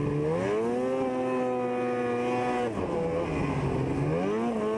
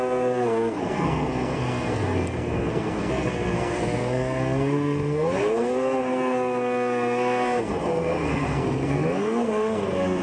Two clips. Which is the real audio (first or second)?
first